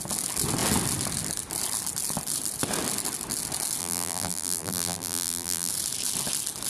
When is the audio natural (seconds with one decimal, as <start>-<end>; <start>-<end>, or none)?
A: 0.0-3.8; 5.7-6.7